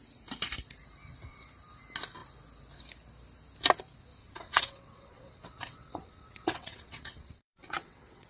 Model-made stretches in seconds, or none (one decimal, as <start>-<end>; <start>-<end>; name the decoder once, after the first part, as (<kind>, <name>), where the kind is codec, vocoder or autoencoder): 4.2-8.3 (vocoder, WaveNeXt)